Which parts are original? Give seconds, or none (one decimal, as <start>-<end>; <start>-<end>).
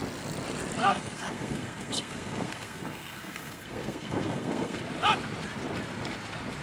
0.0-0.8; 4.8-6.6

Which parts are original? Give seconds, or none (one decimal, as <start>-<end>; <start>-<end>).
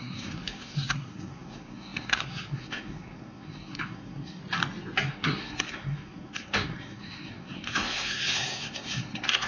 4.4-5.1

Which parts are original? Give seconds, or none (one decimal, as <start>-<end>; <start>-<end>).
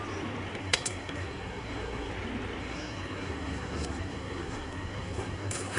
0.0-0.6; 2.1-2.6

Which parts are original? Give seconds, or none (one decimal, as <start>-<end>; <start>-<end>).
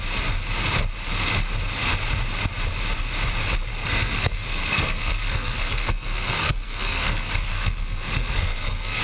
0.0-3.7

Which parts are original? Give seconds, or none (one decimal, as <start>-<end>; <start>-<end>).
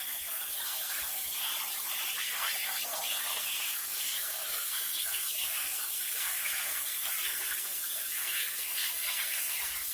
1.5-2.2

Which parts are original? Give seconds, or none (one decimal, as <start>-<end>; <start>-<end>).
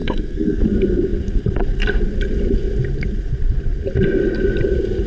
0.6-5.1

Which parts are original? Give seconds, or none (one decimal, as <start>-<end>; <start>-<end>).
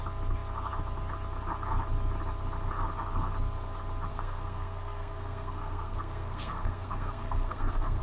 0.0-4.1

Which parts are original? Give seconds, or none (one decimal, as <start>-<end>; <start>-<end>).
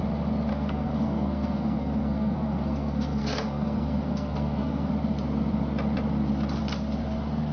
0.0-0.5; 4.9-7.5